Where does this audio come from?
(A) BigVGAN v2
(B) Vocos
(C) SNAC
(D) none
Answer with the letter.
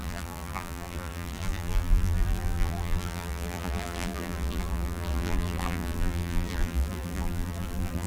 A